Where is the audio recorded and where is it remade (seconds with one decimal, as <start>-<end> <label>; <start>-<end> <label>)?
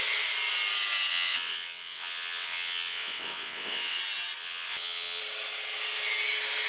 0.0-1.1 recorded; 1.1-4.0 remade; 4.0-4.4 recorded; 4.4-5.2 remade; 5.2-6.7 recorded